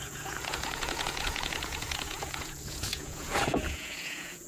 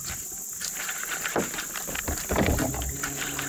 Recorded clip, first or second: second